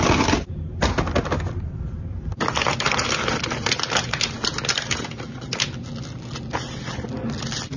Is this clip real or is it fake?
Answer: real